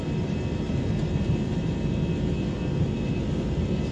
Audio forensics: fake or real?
fake